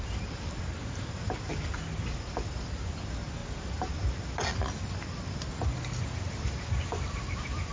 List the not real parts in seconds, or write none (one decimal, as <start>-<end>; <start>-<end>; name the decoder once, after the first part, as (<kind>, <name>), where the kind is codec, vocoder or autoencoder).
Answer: none